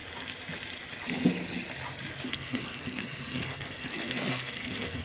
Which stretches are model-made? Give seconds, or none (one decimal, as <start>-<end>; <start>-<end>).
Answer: 2.3-5.0